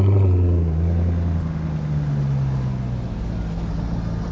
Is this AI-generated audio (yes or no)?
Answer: no